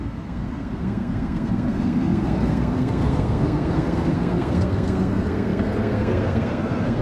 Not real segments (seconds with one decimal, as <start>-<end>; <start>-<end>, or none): 0.0-7.0